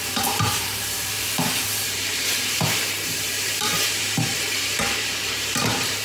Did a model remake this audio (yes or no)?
yes